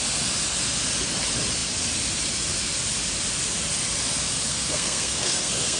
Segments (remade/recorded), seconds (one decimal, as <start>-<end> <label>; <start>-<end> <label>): 0.0-4.5 recorded; 4.5-5.8 remade